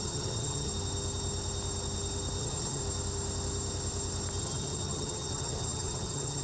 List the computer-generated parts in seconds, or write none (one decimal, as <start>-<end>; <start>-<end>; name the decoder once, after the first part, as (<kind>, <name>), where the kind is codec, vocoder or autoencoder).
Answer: 0.0-0.7 (vocoder, HiFi-GAN); 2.4-2.8; 4.4-6.4